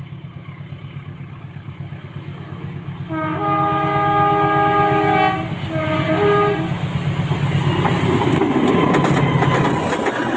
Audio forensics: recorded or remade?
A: recorded